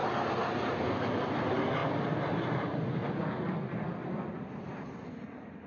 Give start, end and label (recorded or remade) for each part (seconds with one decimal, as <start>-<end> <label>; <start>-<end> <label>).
0.0-5.7 recorded